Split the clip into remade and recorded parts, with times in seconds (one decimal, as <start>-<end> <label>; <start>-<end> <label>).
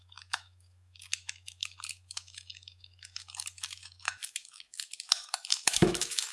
0.0-6.3 remade